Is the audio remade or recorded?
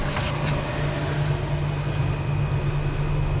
recorded